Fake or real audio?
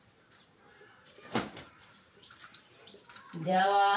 fake